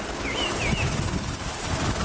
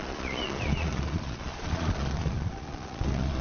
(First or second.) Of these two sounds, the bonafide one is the first